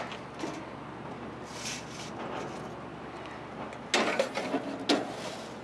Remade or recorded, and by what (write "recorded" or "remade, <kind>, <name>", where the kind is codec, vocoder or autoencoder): recorded